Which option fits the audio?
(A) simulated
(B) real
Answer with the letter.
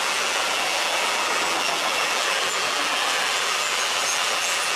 A